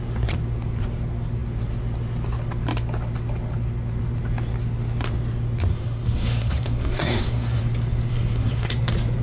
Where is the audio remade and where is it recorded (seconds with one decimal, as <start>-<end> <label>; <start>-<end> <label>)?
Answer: 0.0-5.7 recorded; 5.7-7.6 remade; 7.6-8.1 recorded; 8.1-8.7 remade; 8.7-9.2 recorded